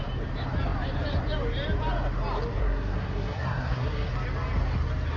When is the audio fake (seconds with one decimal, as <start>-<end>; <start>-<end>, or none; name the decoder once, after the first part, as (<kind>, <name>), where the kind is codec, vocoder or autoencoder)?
2.6-4.1 (codec, SNAC)